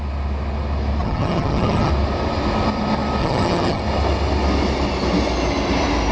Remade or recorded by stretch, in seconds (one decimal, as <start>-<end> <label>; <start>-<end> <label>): 0.0-1.0 recorded; 1.0-1.9 remade; 1.9-3.2 recorded; 3.2-3.8 remade; 3.8-6.1 recorded